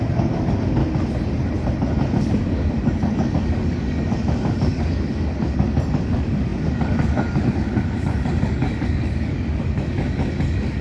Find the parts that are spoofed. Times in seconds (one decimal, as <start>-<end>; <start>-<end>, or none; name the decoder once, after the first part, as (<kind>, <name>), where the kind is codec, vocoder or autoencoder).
0.0-0.8 (codec, DAC); 2.2-10.8